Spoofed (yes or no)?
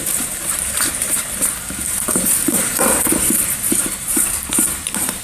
yes